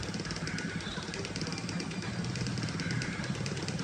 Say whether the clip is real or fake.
fake